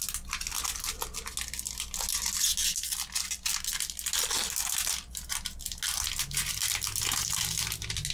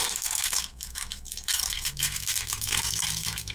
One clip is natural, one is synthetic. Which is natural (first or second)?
first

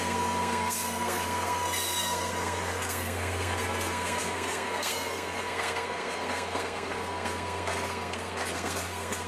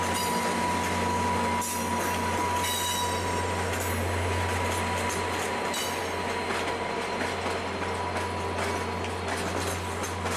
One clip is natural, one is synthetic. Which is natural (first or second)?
second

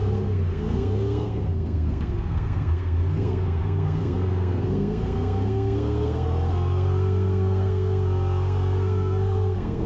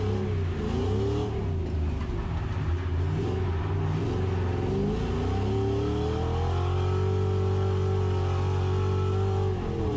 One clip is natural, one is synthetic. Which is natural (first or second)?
second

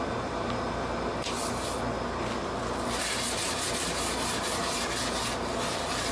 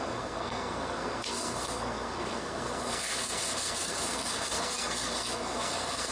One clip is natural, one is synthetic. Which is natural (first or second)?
first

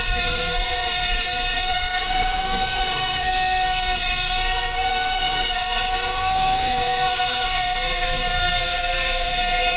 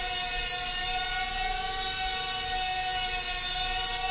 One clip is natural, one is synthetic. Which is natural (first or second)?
second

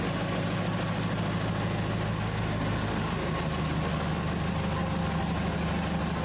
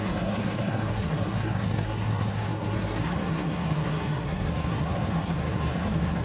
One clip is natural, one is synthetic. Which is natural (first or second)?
first